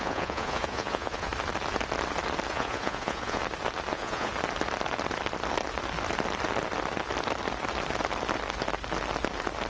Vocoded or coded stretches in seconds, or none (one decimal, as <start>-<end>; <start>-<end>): 0.0-1.3; 2.5-3.4; 3.9-4.3